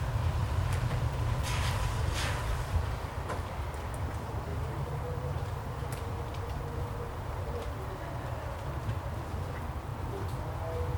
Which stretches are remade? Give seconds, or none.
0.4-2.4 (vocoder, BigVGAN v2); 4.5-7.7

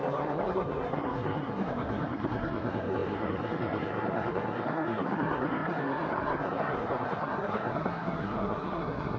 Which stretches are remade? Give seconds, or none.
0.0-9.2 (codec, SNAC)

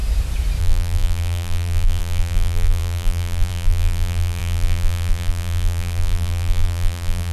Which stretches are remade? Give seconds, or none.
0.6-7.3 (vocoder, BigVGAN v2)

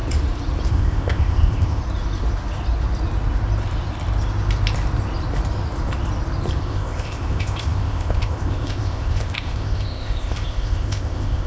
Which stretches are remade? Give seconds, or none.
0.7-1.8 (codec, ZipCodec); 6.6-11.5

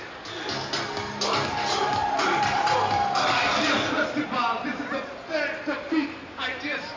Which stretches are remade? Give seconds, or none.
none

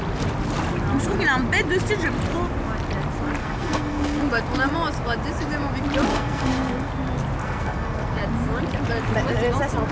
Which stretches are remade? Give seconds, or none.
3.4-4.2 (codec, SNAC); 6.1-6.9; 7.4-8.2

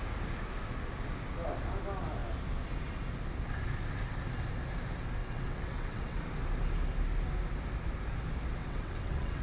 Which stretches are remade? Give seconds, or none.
5.2-6.2 (vocoder, WaveNeXt); 8.6-9.4

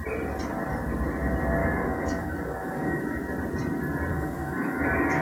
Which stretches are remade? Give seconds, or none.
1.6-3.0 (codec, DAC); 4.1-5.2